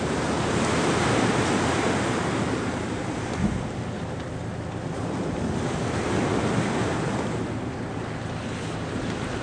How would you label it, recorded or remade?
recorded